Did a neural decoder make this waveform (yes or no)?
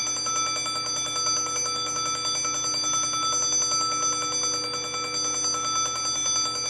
no